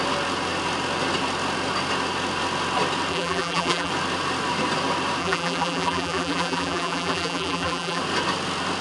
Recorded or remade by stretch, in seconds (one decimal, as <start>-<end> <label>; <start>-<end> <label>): 0.0-3.1 recorded; 3.1-3.9 remade; 3.9-5.2 recorded; 5.2-8.0 remade; 8.0-8.8 recorded